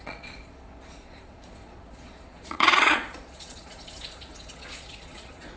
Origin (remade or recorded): remade